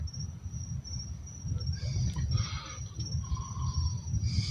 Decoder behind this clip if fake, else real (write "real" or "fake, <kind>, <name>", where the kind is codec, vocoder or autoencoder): real